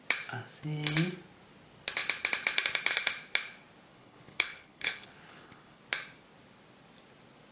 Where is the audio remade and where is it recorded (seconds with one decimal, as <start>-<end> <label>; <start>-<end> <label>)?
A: 0.0-3.9 recorded; 3.9-5.8 remade; 5.8-7.5 recorded